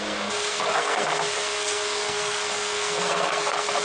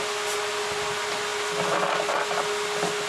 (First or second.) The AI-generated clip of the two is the first